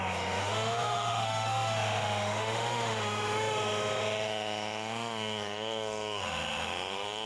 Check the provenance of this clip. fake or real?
fake